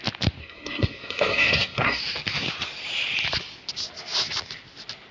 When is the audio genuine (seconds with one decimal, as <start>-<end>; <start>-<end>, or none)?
0.0-0.4; 2.0-5.1